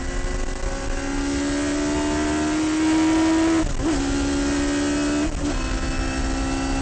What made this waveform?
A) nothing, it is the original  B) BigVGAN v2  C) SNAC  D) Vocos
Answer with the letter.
A